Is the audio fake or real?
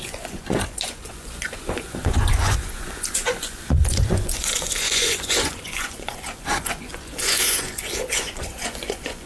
fake